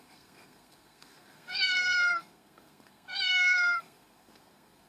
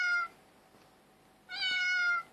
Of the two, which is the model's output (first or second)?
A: first